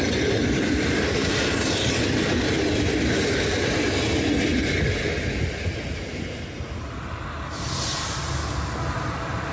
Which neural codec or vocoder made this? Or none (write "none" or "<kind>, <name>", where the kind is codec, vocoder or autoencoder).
none